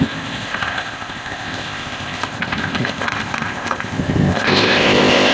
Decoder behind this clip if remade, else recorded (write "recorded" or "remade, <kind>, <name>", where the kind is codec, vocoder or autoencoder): remade, codec, ZipCodec